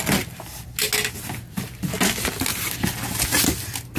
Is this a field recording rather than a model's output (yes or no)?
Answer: yes